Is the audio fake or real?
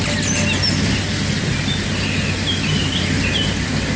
real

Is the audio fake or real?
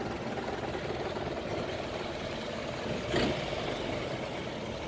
real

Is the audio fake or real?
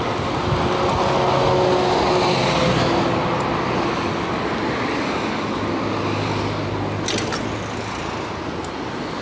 real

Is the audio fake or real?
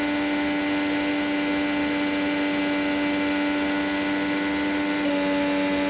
real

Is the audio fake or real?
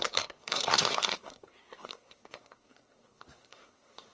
fake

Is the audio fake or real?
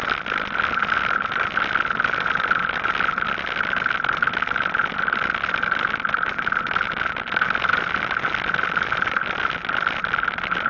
real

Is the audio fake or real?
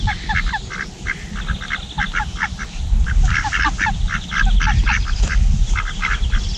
real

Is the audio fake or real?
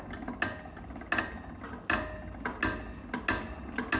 real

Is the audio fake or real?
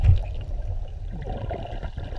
real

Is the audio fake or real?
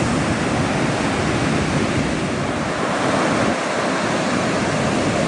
real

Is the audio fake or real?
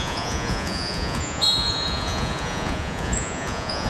fake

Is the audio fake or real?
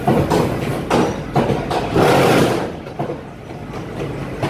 real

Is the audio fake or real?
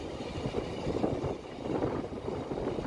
real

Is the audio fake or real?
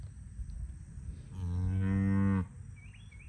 real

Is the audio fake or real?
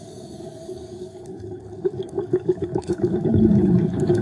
fake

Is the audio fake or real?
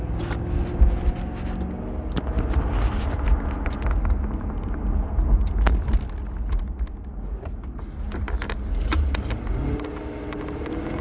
real